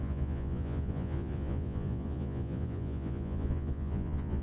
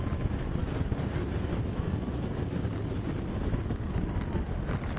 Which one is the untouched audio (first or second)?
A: second